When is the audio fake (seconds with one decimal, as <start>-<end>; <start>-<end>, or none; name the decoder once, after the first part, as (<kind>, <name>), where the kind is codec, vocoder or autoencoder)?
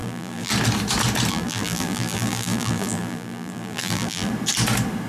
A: 0.0-0.5 (vocoder, BigVGAN v2); 1.3-4.3